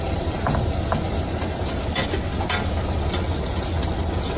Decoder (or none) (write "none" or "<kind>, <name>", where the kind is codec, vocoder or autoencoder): none